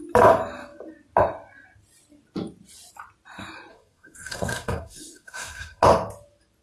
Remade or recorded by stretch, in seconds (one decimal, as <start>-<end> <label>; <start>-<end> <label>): 0.0-3.7 recorded; 3.7-5.8 remade; 5.8-6.6 recorded